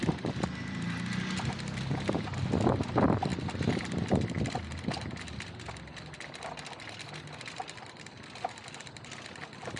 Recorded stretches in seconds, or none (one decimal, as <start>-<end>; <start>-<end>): 0.0-9.8

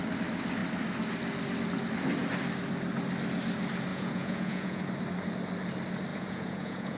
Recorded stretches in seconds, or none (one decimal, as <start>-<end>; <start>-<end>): 0.0-3.9; 4.9-6.1

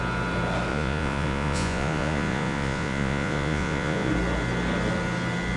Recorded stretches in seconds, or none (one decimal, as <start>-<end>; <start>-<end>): 0.0-0.7; 4.1-5.6

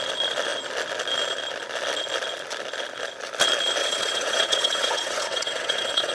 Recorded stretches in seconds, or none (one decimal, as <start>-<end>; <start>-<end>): 0.0-3.8

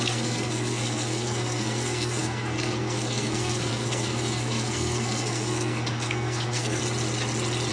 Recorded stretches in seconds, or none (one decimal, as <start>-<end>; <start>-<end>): 6.8-7.7

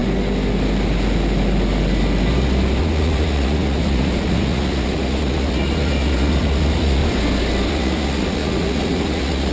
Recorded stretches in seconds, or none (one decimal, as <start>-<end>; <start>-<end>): 0.0-2.8; 7.0-7.7

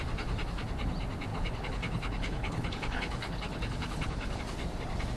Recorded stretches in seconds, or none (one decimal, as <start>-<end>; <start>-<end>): 0.0-1.3; 4.4-5.2

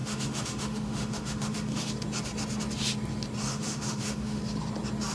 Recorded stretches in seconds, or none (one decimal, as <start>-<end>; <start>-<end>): 1.9-3.5; 4.4-5.1